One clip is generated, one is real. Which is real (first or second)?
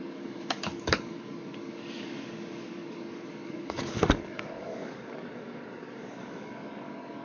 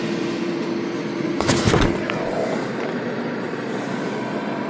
second